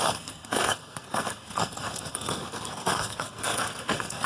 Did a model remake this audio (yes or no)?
yes